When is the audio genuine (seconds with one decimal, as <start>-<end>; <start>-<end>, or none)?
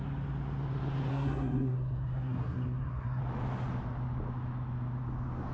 0.0-1.1; 3.2-5.5